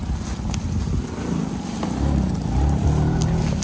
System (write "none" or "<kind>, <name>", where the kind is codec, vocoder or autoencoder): none